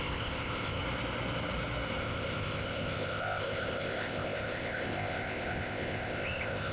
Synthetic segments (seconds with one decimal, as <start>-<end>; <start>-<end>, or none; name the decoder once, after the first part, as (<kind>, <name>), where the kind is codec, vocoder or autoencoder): 0.0-0.8 (codec, ZipCodec); 2.0-6.7